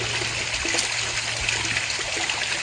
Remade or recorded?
recorded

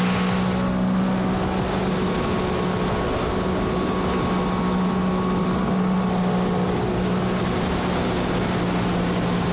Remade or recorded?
recorded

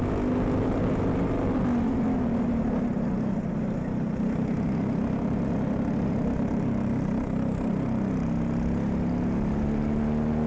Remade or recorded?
recorded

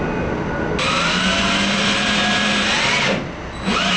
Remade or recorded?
recorded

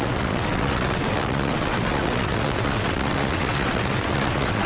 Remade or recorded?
remade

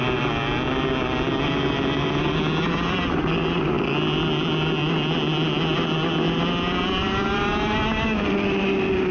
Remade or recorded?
recorded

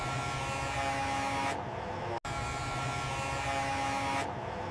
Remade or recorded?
recorded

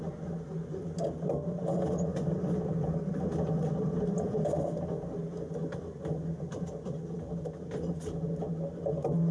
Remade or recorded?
recorded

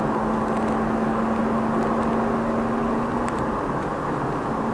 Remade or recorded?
recorded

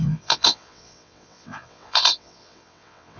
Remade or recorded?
remade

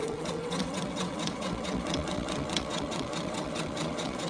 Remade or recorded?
remade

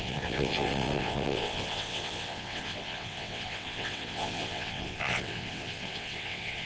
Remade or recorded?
remade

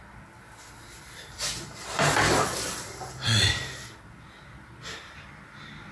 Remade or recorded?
recorded